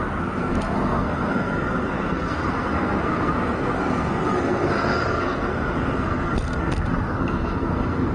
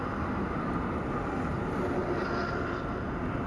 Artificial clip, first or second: first